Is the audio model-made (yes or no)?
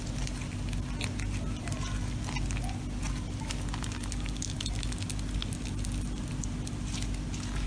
no